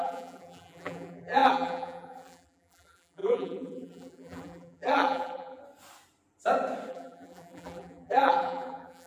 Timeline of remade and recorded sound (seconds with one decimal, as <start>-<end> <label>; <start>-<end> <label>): 0.0-5.6 remade; 5.6-6.9 recorded; 6.9-9.1 remade